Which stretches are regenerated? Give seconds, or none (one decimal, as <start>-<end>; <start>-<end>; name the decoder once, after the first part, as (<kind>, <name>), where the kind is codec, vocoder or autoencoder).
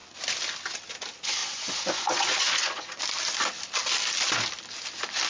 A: 1.4-3.0 (vocoder, Vocos)